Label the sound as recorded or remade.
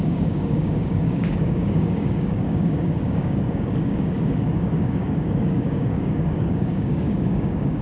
remade